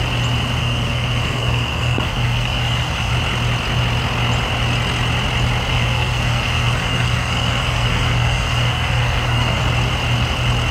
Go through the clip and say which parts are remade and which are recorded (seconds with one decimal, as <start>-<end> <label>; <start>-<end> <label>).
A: 0.0-0.6 recorded; 0.6-3.1 remade; 3.1-5.7 recorded; 5.7-9.6 remade; 9.6-10.7 recorded

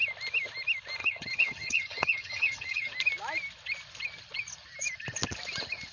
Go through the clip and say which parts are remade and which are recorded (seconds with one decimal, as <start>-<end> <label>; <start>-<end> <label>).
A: 0.0-1.0 recorded; 1.0-2.9 remade; 2.9-5.9 recorded

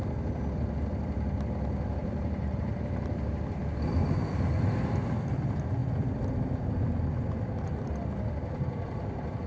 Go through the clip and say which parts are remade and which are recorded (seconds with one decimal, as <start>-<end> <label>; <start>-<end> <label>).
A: 0.0-2.0 recorded; 2.0-3.1 remade; 3.1-5.8 recorded; 5.8-6.8 remade; 6.8-9.5 recorded

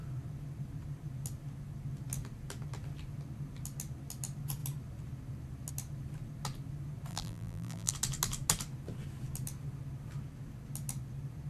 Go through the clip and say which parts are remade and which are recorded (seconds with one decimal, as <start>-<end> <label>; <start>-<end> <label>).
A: 0.0-7.1 recorded; 7.1-7.9 remade; 7.9-11.5 recorded